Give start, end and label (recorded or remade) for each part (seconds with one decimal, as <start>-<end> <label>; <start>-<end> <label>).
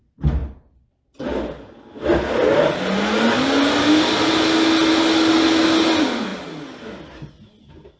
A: 0.0-8.0 recorded